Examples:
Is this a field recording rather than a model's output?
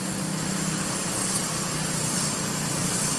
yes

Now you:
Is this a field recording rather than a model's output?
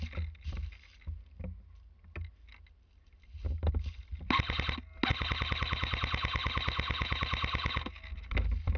yes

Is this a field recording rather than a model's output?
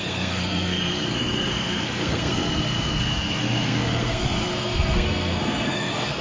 no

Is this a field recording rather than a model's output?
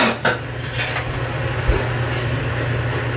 yes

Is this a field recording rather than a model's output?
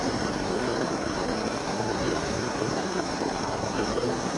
no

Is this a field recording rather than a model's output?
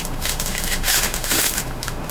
no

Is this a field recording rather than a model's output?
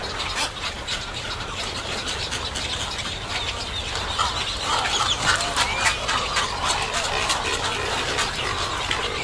yes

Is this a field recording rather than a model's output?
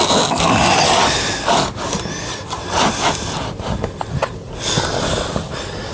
yes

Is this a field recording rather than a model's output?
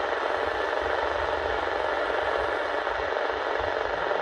yes